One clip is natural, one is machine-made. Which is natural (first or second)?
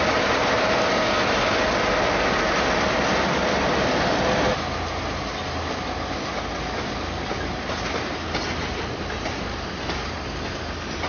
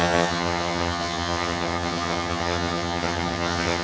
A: first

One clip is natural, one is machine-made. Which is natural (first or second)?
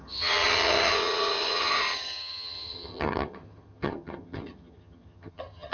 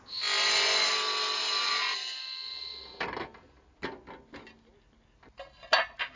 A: second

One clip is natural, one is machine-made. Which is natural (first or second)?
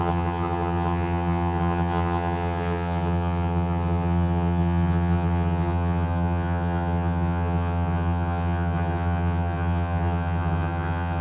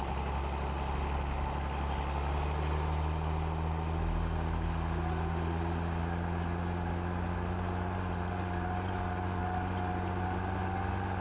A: second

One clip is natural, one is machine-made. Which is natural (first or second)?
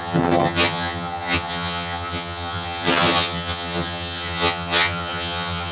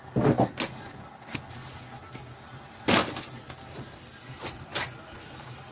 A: second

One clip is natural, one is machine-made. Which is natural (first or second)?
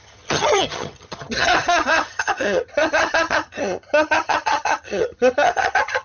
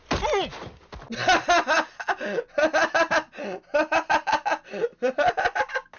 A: second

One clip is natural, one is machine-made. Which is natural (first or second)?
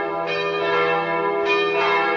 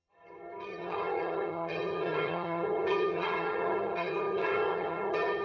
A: first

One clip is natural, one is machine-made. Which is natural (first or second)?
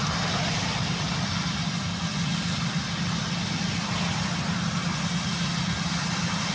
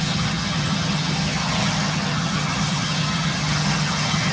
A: first